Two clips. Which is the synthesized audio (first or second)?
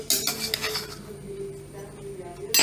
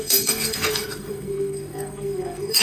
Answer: second